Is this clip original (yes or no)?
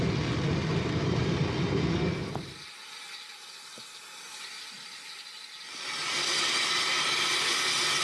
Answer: yes